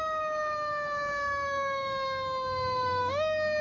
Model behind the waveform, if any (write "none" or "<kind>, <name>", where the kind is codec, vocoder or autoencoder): autoencoder, DAC-VAE